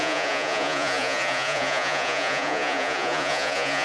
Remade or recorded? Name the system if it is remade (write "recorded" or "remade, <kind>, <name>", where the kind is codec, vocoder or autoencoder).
remade, vocoder, Vocos